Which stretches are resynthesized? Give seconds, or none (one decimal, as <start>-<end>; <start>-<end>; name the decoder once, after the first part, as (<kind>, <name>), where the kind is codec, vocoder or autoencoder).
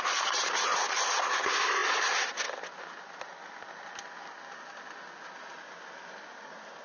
none